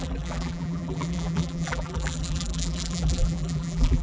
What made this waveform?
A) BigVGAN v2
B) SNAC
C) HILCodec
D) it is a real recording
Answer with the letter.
A